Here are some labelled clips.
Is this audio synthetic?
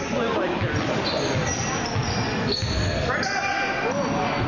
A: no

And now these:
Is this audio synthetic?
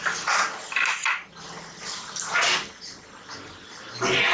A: no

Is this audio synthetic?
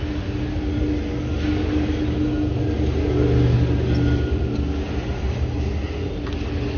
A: no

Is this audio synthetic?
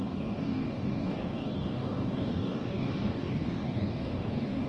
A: yes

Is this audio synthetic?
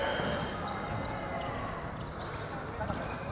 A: no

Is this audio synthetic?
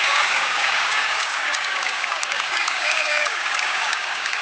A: yes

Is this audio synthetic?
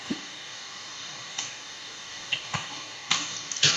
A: yes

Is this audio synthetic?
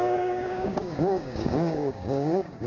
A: yes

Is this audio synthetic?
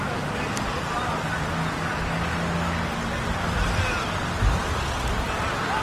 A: no